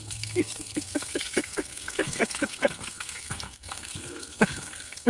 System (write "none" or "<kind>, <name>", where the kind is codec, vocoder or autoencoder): codec, SNAC